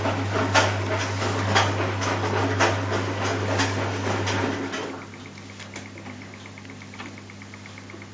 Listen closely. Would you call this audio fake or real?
real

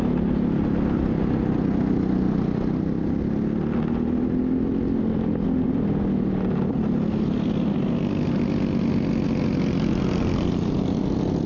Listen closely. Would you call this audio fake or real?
real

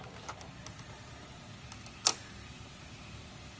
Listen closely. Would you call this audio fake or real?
real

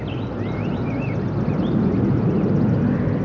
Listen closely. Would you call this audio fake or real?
real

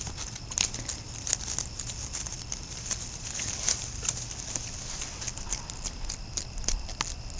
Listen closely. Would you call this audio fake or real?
real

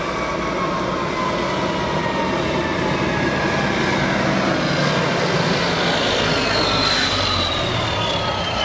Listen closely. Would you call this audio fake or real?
real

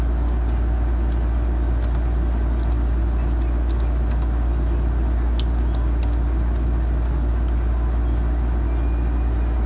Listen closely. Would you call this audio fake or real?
real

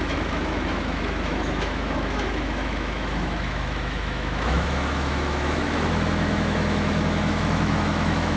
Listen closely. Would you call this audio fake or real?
fake